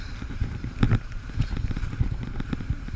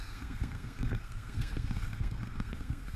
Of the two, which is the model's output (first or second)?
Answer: second